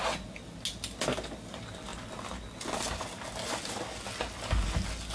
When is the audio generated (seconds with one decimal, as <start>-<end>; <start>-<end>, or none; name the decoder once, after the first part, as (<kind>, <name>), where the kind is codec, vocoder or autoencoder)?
none